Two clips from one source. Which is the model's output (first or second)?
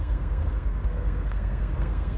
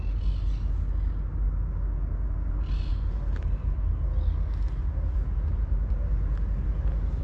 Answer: first